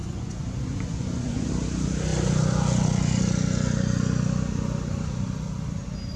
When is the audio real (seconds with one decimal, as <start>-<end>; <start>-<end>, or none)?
1.5-6.2